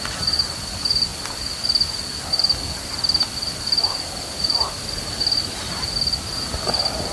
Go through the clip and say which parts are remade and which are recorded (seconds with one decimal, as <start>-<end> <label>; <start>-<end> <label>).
0.0-7.1 recorded